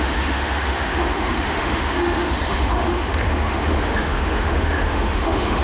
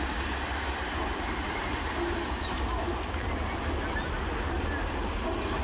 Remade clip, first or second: first